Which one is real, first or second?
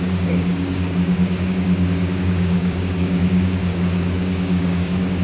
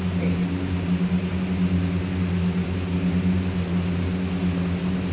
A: second